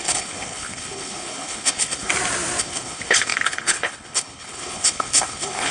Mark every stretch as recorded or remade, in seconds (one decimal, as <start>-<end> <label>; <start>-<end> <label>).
0.0-2.1 remade; 2.1-2.6 recorded; 2.6-5.7 remade